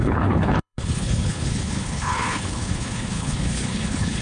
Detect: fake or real fake